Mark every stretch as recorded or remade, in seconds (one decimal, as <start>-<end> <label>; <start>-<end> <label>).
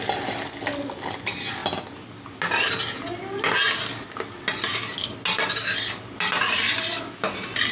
0.0-7.7 recorded